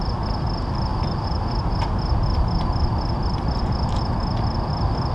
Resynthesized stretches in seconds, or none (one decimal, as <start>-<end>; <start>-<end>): none